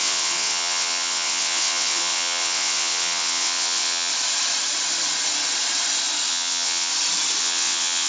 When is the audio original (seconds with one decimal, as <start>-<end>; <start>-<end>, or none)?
4.1-6.3; 6.9-7.4